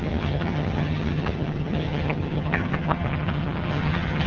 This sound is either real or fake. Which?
fake